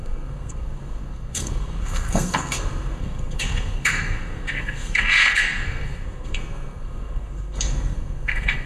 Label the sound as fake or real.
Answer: fake